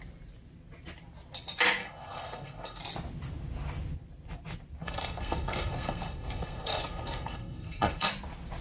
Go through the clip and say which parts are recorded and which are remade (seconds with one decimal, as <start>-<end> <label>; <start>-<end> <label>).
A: 0.0-1.8 recorded; 1.8-2.8 remade; 2.8-4.8 recorded; 4.8-8.1 remade; 8.1-8.6 recorded